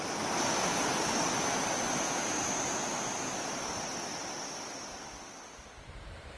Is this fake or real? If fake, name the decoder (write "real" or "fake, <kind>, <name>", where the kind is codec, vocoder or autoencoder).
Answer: real